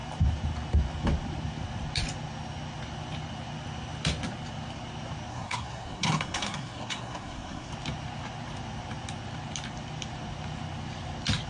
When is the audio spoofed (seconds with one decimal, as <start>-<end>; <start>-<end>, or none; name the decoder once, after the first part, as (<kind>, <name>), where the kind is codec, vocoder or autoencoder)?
5.3-7.7 (codec, SNAC)